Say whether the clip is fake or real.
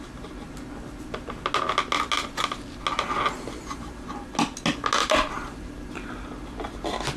real